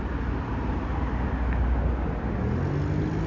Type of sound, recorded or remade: recorded